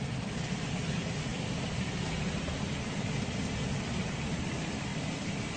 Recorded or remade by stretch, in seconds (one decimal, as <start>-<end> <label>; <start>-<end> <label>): 0.0-1.3 recorded; 1.3-3.5 remade; 3.5-5.6 recorded